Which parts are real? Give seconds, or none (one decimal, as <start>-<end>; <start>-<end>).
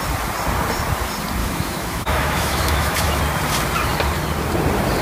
0.0-1.4; 3.2-5.0